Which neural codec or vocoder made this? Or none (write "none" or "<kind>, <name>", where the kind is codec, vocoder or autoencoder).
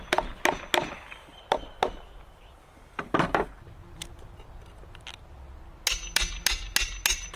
none